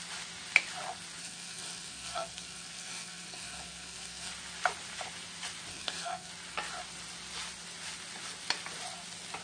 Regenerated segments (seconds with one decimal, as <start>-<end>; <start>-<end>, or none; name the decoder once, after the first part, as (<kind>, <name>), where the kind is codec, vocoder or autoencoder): 1.2-4.3 (codec, SNAC); 5.7-6.3